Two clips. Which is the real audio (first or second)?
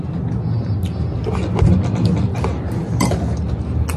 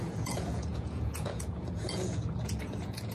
first